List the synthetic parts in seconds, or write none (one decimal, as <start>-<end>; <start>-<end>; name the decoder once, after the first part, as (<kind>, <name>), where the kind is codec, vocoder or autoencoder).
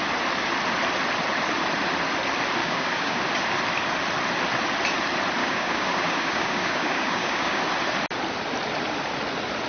2.6-3.2 (codec, DAC); 5.4-7.6